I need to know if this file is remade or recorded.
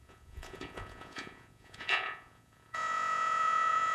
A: remade